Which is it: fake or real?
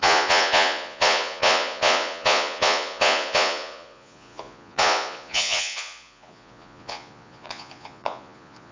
fake